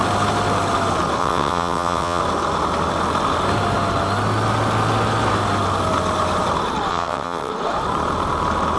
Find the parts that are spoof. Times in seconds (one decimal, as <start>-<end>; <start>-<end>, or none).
1.2-2.2; 6.9-7.5